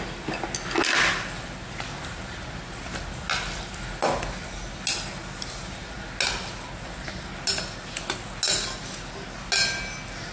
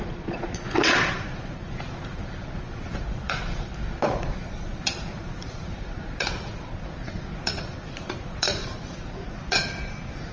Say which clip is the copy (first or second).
second